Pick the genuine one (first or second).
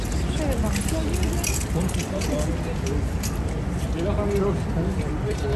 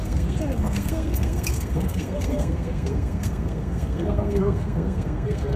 first